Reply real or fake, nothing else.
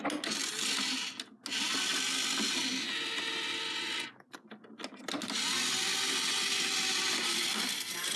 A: real